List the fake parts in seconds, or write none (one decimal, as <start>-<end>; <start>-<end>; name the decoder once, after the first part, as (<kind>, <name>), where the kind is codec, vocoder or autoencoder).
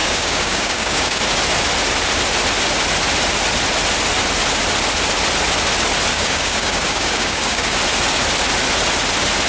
0.0-1.2 (codec, DAC); 6.1-7.8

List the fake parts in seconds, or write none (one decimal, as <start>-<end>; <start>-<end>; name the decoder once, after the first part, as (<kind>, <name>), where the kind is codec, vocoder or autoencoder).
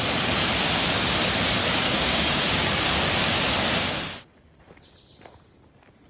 1.6-3.1 (codec, DAC)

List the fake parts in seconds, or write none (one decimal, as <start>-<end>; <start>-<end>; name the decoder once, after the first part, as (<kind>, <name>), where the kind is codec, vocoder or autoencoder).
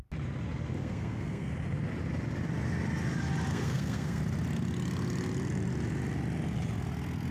0.8-1.5 (codec, SNAC); 3.5-4.2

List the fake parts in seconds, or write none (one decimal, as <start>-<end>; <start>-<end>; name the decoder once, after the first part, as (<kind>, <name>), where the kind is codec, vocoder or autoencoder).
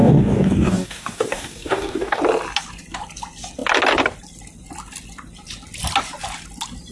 0.0-2.2 (codec, DAC)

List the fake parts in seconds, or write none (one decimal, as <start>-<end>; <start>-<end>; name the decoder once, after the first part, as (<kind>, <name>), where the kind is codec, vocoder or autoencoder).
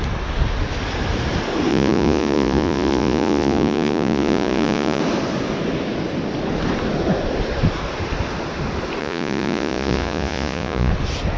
1.7-5.0 (vocoder, Vocos); 9.0-10.9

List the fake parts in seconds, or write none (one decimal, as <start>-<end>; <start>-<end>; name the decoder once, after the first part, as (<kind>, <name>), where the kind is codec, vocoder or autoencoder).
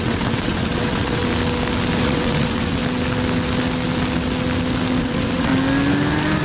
0.0-1.2 (vocoder, WaveNeXt); 2.0-2.8; 5.0-5.5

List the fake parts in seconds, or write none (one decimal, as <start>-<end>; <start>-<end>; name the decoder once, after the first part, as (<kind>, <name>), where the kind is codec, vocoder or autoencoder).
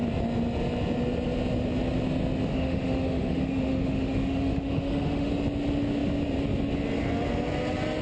2.5-5.3 (autoencoder, DAC-VAE)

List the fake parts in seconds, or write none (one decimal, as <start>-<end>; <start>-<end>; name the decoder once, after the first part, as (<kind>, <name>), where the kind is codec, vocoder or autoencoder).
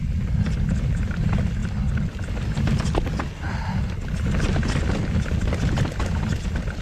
none